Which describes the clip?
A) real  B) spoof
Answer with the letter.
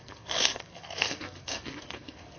B